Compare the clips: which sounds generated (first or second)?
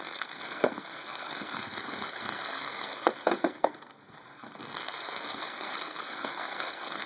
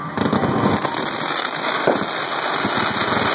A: first